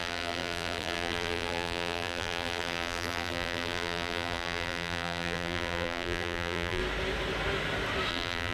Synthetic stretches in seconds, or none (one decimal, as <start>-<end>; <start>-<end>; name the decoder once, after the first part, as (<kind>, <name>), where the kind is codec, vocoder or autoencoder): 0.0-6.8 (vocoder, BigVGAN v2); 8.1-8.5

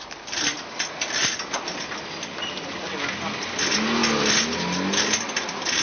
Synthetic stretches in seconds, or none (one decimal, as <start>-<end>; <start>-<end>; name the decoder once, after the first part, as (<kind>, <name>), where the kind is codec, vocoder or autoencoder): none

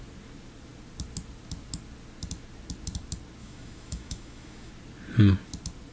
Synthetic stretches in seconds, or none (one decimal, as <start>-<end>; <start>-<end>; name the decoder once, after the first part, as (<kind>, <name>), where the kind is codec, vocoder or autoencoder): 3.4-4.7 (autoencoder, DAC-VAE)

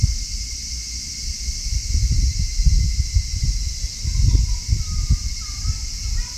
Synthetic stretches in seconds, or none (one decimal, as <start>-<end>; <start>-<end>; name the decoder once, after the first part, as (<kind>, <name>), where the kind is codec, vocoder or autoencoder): none

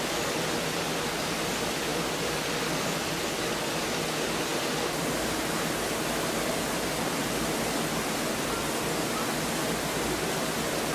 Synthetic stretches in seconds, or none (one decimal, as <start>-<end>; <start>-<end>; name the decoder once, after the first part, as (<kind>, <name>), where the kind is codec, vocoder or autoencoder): none